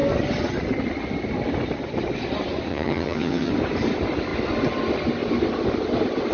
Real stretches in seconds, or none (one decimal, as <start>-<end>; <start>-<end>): 0.0-2.7; 3.5-6.3